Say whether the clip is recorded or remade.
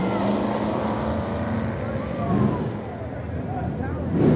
recorded